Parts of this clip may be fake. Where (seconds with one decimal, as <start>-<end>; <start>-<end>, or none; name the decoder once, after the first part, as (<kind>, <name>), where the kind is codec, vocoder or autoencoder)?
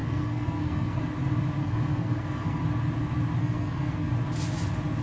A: 0.0-1.0 (codec, SNAC); 1.6-2.6; 3.4-4.1